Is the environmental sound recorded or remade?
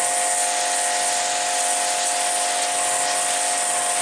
recorded